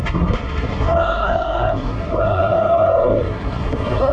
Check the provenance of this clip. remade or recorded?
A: remade